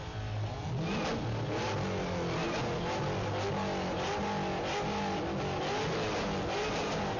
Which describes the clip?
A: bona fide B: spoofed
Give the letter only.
A